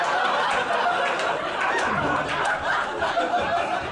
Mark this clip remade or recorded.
recorded